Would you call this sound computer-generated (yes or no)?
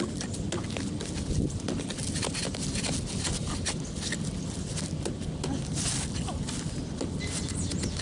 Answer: no